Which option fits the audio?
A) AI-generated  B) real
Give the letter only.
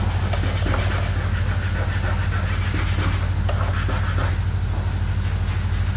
B